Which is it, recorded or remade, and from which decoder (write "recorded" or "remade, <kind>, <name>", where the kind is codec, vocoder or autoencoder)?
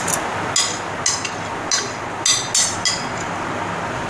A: recorded